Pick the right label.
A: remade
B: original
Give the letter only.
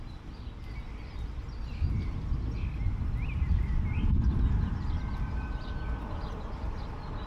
B